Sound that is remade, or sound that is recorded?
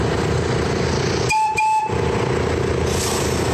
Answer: recorded